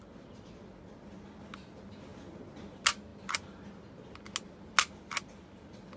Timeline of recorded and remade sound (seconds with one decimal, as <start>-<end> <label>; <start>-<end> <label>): 0.0-6.0 recorded